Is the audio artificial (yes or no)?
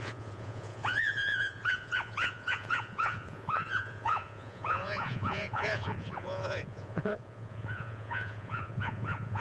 yes